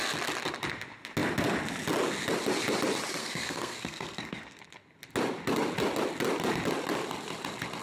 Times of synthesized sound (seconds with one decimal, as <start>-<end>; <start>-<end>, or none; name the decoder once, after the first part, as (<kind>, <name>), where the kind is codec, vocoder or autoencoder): 3.2-4.6 (codec, SNAC)